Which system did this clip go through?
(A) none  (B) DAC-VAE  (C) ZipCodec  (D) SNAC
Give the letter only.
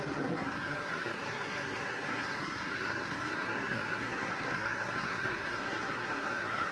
D